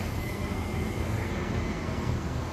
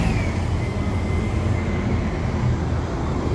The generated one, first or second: first